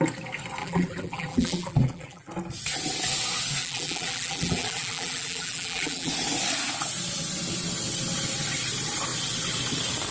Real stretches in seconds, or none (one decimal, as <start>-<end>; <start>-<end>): 0.0-0.6; 2.3-3.6; 6.1-10.1